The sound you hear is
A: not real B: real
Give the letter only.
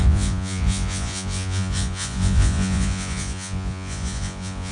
A